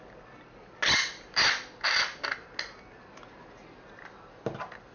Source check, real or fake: real